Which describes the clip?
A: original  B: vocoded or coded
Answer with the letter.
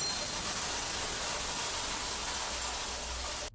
A